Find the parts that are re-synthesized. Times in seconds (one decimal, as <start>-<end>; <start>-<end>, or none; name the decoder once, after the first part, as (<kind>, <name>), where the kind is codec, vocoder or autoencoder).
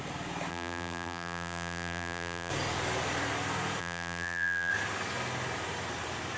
0.5-2.5 (vocoder, BigVGAN v2); 3.8-4.7